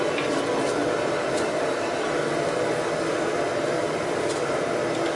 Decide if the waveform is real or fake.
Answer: real